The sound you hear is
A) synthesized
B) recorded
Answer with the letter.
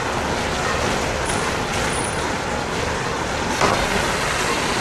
B